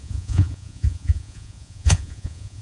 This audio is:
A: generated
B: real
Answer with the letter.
A